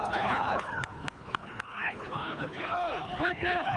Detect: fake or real fake